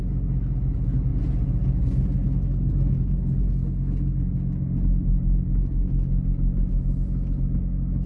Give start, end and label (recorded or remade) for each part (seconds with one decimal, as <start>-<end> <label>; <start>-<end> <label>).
0.0-8.1 recorded